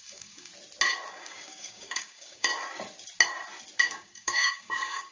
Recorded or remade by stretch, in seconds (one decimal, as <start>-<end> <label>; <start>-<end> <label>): 0.0-0.5 remade; 0.5-1.1 recorded; 1.1-2.5 remade; 2.5-3.8 recorded; 3.8-5.1 remade